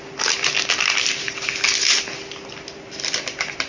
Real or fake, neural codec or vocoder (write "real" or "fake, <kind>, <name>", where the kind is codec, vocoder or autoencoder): real